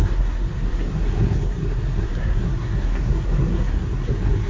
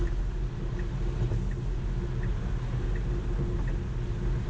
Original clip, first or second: second